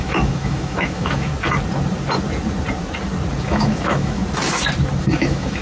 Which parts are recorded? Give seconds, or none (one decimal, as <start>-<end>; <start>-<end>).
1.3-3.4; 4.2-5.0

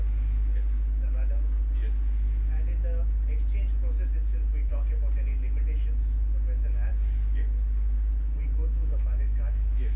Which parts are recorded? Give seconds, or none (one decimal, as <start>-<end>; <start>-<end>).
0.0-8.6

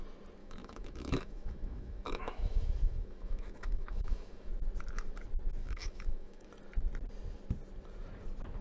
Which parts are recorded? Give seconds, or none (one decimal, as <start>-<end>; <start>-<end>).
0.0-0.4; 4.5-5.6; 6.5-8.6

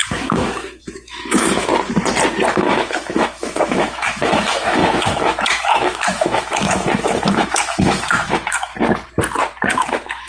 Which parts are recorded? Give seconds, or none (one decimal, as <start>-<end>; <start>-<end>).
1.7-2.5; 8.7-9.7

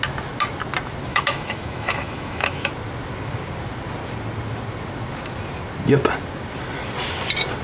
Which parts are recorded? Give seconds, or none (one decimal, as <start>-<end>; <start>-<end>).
0.0-1.1; 2.7-7.6

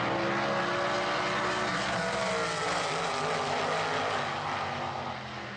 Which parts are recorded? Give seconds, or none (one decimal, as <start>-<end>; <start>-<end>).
0.0-5.6

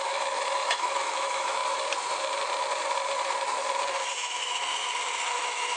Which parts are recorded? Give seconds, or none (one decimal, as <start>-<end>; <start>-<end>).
1.6-4.1; 4.7-5.3

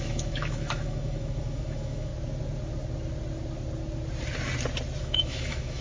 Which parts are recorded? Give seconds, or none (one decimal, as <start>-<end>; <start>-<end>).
2.1-5.0